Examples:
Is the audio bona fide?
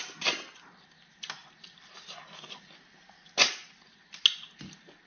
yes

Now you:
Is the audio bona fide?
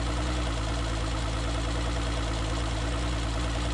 yes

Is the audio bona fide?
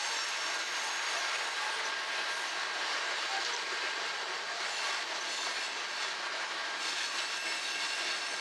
yes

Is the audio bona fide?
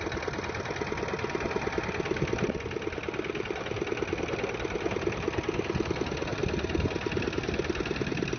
yes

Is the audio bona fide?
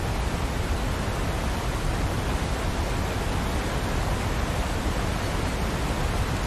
yes